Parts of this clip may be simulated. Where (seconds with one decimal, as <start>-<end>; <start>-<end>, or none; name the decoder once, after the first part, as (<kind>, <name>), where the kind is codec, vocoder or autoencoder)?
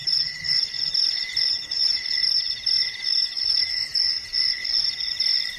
3.9-5.1 (vocoder, BigVGAN v2)